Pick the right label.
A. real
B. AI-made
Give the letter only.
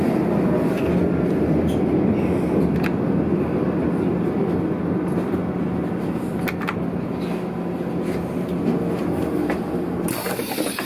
A